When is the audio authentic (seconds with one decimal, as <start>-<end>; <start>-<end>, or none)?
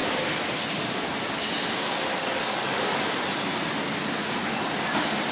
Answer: 0.0-2.1; 3.0-5.3